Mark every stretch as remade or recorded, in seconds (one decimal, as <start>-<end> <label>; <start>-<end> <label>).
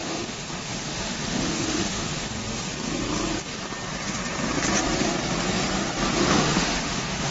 0.0-2.4 remade; 2.4-6.2 recorded; 6.2-7.3 remade